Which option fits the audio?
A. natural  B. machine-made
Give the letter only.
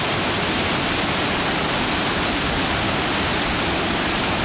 A